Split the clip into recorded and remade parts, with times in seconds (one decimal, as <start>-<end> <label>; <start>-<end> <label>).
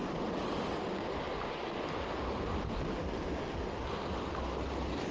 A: 0.0-5.1 recorded